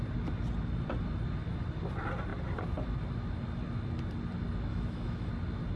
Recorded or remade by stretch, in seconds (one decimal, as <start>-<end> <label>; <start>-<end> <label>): 0.0-4.7 recorded; 4.7-5.3 remade; 5.3-5.8 recorded

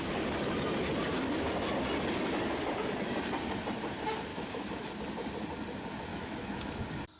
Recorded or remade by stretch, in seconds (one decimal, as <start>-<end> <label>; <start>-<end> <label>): 0.0-4.3 recorded; 4.3-4.9 remade; 4.9-6.1 recorded; 6.1-6.7 remade; 6.7-7.2 recorded

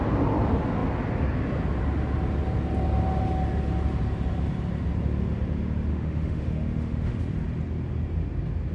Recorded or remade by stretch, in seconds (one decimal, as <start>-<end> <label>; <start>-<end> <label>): 0.0-5.9 recorded; 5.9-7.2 remade; 7.2-8.7 recorded

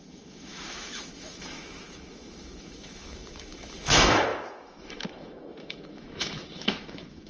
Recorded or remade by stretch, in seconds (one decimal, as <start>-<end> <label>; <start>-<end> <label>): 0.0-7.3 remade

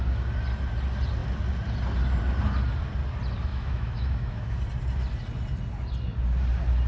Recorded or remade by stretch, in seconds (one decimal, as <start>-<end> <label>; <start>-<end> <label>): 0.0-3.5 recorded; 3.5-4.6 remade; 4.6-6.9 recorded

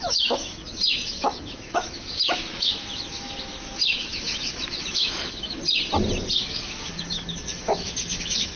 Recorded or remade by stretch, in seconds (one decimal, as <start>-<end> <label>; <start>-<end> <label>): 0.0-5.6 remade; 5.6-6.4 recorded; 6.4-8.6 remade